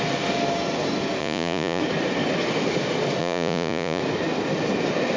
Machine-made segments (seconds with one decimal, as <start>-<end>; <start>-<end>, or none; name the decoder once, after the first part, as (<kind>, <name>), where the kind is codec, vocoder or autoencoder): 1.2-1.8 (vocoder, Vocos); 3.2-4.0